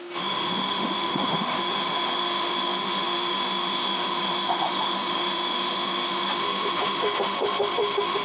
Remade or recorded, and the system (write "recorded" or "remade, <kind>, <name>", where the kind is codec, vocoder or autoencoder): remade, autoencoder, DAC-VAE